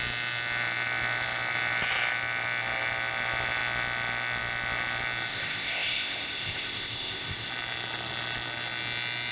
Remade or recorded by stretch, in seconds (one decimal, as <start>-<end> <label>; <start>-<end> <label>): 0.0-5.3 recorded; 5.3-7.5 remade; 7.5-9.3 recorded